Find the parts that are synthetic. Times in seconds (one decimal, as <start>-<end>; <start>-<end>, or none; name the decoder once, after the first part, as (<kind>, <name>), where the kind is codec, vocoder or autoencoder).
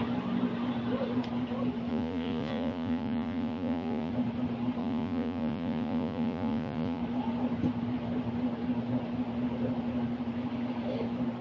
1.9-4.1 (vocoder, Vocos); 4.8-7.0